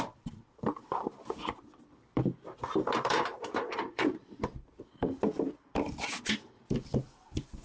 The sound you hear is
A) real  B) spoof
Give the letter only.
B